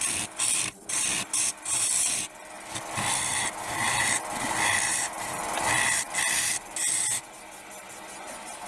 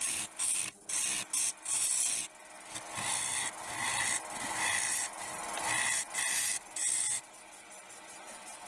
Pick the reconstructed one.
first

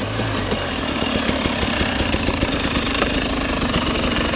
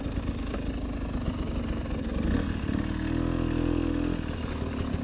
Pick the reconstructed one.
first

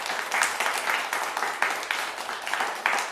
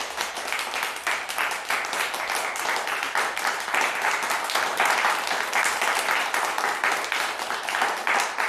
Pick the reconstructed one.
second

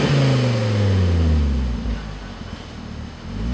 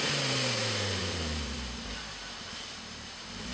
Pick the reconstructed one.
second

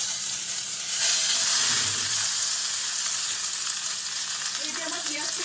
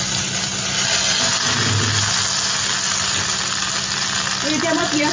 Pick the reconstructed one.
first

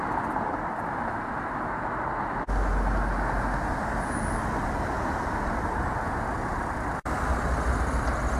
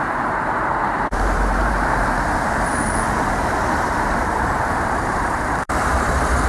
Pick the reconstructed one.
second